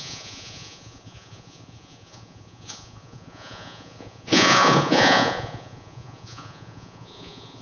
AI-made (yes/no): yes